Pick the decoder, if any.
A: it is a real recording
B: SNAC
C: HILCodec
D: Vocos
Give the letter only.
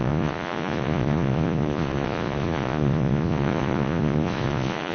D